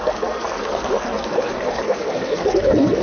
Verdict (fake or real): fake